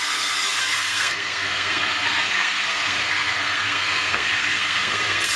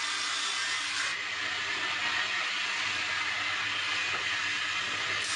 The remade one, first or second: first